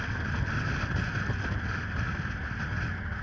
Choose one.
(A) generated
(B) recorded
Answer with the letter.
B